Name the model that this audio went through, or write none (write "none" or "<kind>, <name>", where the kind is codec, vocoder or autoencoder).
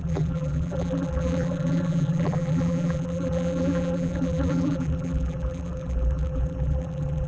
vocoder, BigVGAN v2